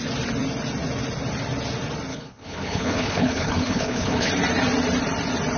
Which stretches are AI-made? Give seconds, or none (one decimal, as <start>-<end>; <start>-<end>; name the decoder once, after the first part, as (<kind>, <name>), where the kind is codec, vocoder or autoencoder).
2.1-4.3 (codec, HILCodec)